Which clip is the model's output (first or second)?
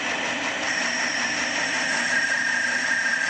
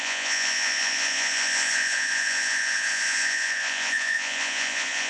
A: second